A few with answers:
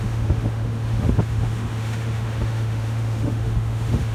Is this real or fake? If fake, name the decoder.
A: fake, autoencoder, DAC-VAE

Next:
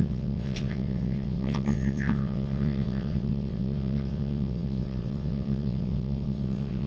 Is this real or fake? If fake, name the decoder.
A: fake, vocoder, WaveNeXt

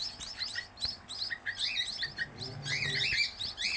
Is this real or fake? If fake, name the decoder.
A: real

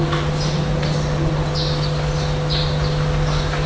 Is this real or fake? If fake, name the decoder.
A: real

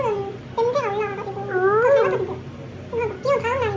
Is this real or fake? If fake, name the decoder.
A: real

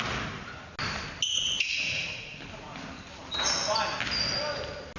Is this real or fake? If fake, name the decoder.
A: real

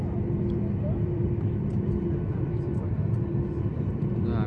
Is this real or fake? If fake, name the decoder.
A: fake, vocoder, BigVGAN v2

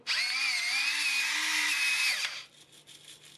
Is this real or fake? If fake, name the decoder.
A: real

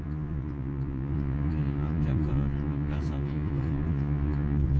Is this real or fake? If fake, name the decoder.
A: fake, vocoder, Vocos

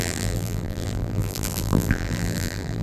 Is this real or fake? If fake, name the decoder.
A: fake, vocoder, BigVGAN v2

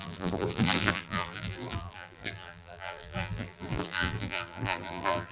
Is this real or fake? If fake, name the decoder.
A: fake, vocoder, BigVGAN v2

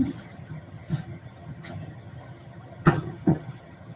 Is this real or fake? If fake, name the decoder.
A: fake, vocoder, HiFi-GAN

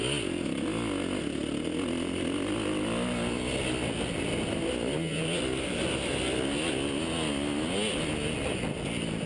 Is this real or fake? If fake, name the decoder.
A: real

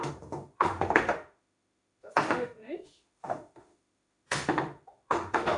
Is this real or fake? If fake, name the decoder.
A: fake, autoencoder, DAC-VAE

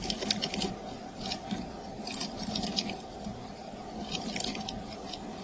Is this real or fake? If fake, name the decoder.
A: real